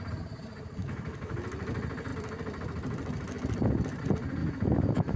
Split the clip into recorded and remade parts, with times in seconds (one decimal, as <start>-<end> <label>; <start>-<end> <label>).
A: 0.0-0.8 recorded; 0.8-1.3 remade; 1.3-4.4 recorded; 4.4-5.2 remade